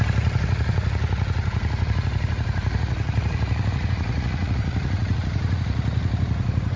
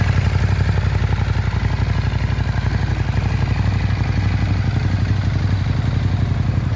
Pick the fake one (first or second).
first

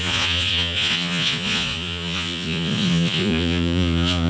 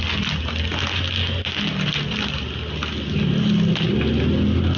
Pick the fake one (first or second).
first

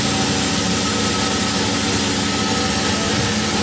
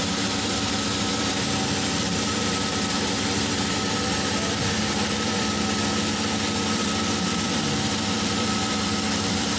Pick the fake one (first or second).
second